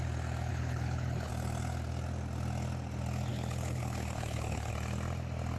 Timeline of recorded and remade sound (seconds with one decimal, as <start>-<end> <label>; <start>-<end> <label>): 0.0-0.5 recorded; 0.5-1.3 remade; 1.3-3.3 recorded; 3.3-4.7 remade; 4.7-5.6 recorded